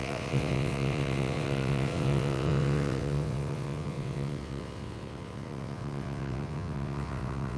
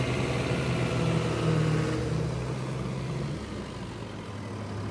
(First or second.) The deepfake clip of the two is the first